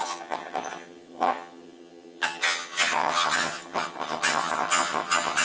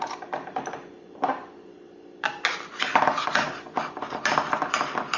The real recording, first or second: second